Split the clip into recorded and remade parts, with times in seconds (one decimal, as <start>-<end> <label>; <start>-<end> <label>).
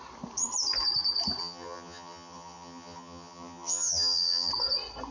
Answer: 0.0-1.4 recorded; 1.4-4.5 remade; 4.5-5.1 recorded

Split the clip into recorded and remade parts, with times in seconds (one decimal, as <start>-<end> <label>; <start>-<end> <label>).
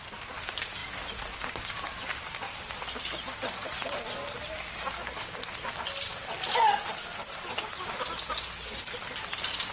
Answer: 0.0-9.7 recorded